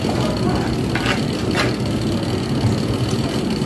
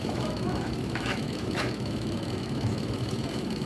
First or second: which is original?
first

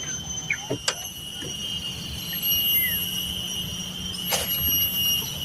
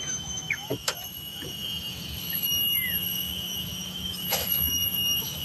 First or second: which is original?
first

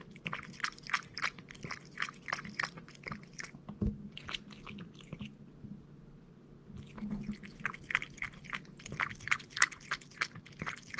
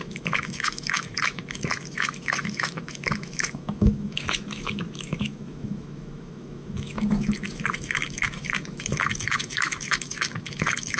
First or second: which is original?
first